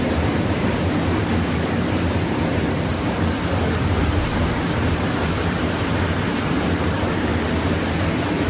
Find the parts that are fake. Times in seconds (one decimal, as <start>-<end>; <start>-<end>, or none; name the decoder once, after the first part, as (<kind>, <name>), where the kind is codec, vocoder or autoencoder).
0.0-0.8 (vocoder, BigVGAN v2); 1.5-7.3; 8.0-8.5